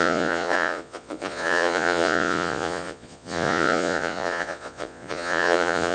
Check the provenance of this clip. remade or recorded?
remade